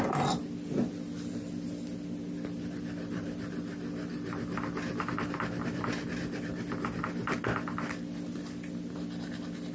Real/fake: real